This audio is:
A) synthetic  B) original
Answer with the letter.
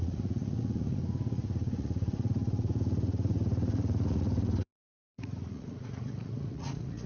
A